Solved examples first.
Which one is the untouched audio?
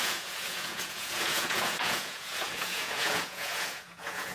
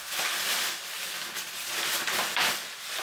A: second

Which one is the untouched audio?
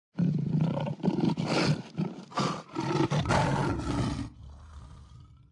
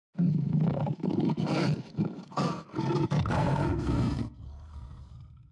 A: first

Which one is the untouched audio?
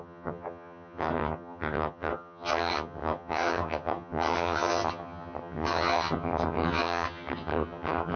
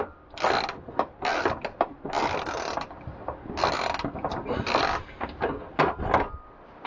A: second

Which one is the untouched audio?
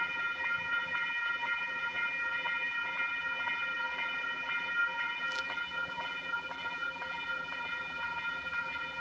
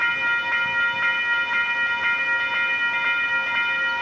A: second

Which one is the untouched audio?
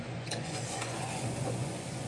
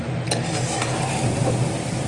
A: second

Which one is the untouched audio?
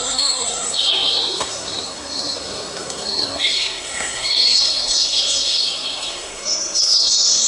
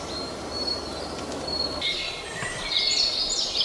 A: second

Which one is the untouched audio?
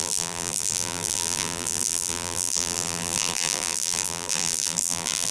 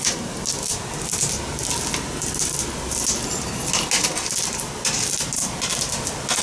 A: second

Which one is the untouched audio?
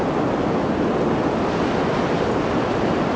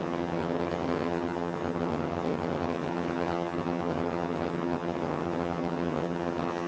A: first